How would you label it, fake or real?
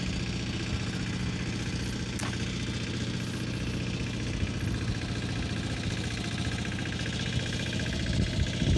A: real